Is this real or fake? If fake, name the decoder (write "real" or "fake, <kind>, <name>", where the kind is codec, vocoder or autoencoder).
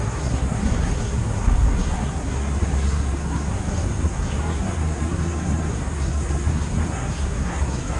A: fake, codec, SNAC